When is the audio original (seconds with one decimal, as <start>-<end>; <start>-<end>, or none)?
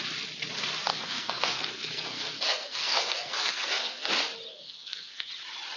0.0-0.9; 4.1-4.5; 5.3-5.8